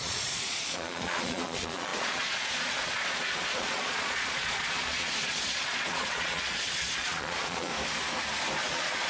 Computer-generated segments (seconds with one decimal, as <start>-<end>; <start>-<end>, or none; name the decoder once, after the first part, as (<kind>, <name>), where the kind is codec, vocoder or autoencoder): 0.0-7.7 (vocoder, Vocos); 8.6-9.1